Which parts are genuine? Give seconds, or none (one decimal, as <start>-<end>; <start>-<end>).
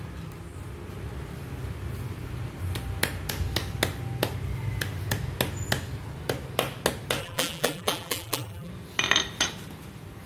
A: 0.0-7.2; 8.7-10.3